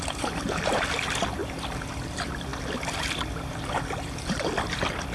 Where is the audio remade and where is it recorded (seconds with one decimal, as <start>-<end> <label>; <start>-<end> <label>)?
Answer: 0.0-2.5 remade; 2.5-3.1 recorded; 3.1-5.1 remade